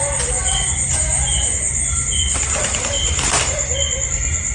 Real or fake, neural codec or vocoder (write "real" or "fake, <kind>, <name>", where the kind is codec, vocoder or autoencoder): real